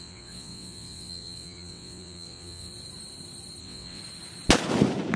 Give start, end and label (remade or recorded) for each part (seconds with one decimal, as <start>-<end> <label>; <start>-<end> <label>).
0.0-2.7 remade; 2.7-3.6 recorded; 3.6-4.0 remade; 4.0-5.2 recorded